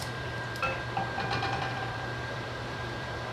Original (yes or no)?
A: no